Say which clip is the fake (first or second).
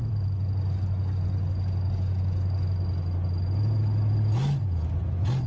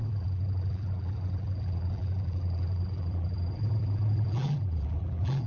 second